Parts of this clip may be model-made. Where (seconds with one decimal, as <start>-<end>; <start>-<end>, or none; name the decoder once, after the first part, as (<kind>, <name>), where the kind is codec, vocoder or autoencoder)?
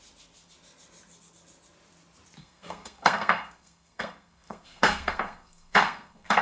2.4-6.4 (codec, SNAC)